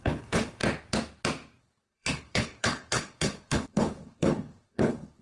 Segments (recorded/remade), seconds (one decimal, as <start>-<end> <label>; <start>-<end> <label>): 0.0-0.6 remade; 0.6-1.6 recorded; 1.6-5.2 remade